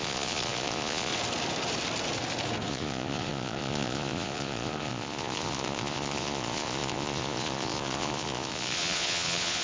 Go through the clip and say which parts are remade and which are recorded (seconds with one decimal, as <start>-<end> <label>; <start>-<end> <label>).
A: 0.0-1.1 remade; 1.1-2.7 recorded; 2.7-9.6 remade